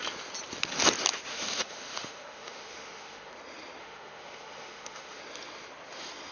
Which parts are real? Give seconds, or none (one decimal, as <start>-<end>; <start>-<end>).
0.0-1.3; 3.3-3.8; 5.2-6.3